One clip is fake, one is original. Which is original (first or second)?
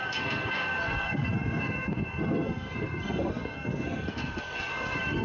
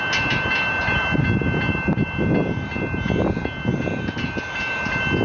second